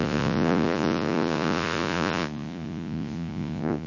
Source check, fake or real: fake